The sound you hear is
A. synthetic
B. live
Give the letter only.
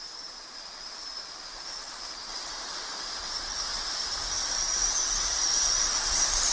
A